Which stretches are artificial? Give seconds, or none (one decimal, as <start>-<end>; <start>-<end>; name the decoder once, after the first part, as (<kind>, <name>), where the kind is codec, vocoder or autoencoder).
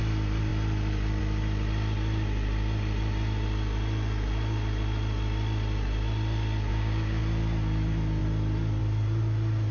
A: 6.7-7.2 (codec, DAC)